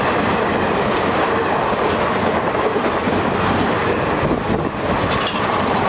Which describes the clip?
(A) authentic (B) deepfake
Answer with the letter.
A